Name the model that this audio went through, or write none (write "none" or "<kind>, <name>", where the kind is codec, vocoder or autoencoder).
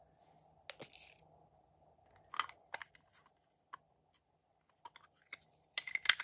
none